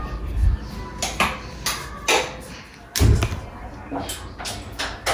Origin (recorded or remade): recorded